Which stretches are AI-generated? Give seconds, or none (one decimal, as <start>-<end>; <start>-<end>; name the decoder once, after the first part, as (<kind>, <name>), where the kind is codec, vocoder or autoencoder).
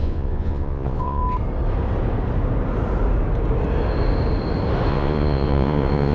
0.0-1.2 (vocoder, Vocos); 4.9-6.1